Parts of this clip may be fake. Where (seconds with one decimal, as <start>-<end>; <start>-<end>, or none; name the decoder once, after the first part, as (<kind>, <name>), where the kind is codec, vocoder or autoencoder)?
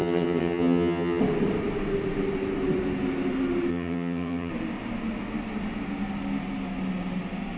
0.0-1.2 (vocoder, HiFi-GAN); 3.7-4.5